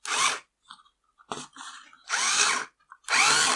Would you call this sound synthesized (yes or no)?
no